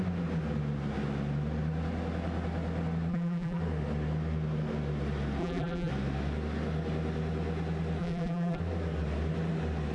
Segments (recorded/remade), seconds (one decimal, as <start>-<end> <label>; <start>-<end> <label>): 0.0-3.1 recorded; 3.1-3.6 remade; 3.6-5.4 recorded; 5.4-5.9 remade; 5.9-8.0 recorded; 8.0-8.6 remade; 8.6-9.9 recorded